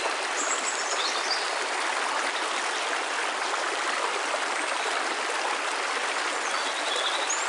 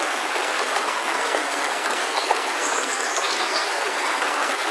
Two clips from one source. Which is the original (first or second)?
first